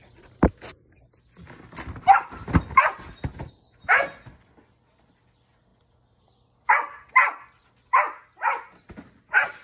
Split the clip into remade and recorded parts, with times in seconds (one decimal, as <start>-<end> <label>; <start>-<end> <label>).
0.0-9.6 recorded